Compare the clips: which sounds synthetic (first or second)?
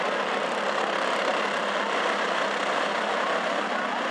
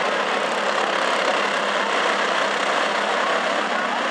first